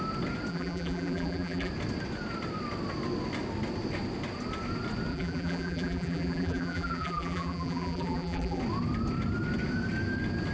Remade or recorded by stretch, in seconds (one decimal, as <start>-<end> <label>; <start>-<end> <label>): 0.0-0.5 recorded; 0.5-1.7 remade; 1.7-5.1 recorded; 5.1-8.6 remade; 8.6-10.5 recorded